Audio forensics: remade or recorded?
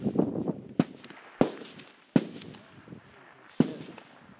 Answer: recorded